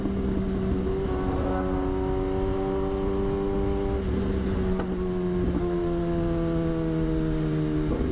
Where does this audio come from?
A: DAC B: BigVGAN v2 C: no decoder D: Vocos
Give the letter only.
C